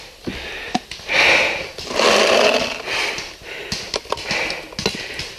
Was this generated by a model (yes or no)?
no